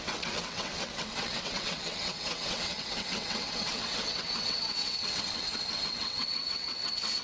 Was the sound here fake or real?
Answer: fake